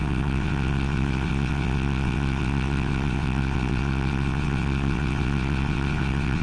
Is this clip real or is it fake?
fake